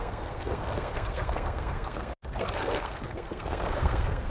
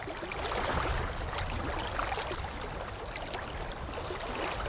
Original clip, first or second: second